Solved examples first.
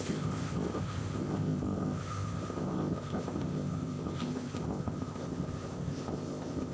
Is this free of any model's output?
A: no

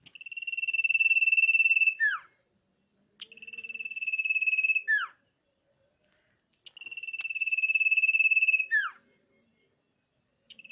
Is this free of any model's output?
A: yes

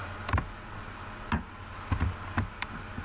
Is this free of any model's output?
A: yes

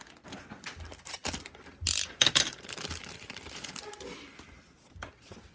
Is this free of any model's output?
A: yes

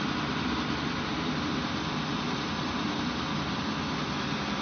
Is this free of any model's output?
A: yes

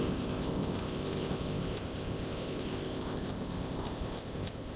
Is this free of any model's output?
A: no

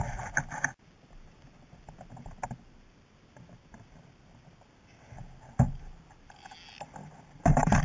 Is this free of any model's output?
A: yes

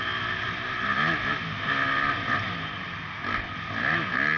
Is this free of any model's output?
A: yes